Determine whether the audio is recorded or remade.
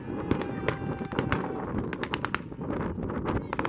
recorded